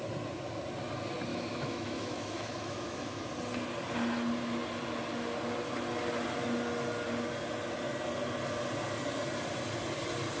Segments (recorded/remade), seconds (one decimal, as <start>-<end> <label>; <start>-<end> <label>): 0.0-1.3 recorded; 1.3-3.2 remade; 3.2-10.4 recorded